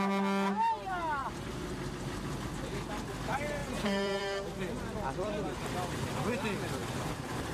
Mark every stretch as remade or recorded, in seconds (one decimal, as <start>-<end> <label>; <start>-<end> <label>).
0.0-3.6 recorded; 3.6-6.3 remade; 6.3-6.8 recorded; 6.8-7.5 remade